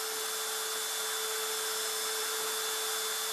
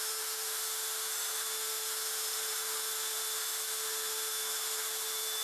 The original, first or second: first